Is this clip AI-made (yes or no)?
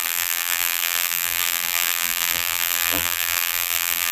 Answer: yes